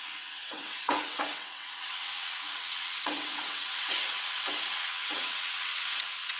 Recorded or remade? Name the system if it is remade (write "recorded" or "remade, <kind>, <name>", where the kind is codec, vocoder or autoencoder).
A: remade, vocoder, WaveNeXt